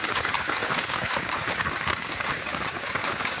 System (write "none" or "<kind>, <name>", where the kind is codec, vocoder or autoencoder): codec, DAC